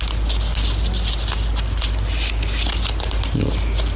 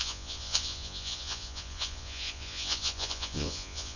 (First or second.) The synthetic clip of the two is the second